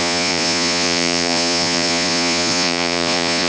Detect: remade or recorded remade